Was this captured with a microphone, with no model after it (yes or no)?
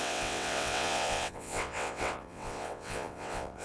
no